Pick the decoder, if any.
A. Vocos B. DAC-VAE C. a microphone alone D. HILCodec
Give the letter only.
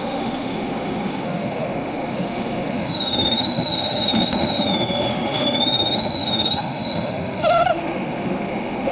B